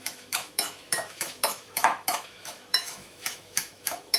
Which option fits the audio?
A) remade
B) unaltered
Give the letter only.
A